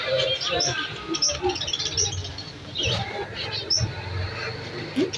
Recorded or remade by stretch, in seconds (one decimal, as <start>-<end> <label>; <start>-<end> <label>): 0.0-2.2 recorded; 2.2-3.1 remade; 3.1-5.2 recorded